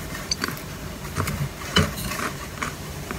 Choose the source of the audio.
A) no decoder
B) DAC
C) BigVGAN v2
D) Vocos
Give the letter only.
C